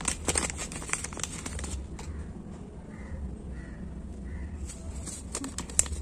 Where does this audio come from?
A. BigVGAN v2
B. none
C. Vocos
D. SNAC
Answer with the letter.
B